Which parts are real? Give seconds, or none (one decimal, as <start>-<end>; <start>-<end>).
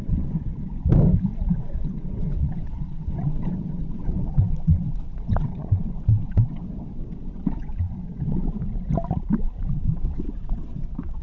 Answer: 0.7-1.5; 8.4-9.7